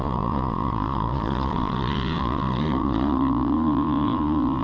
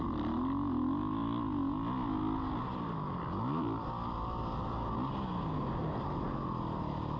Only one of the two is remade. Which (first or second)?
first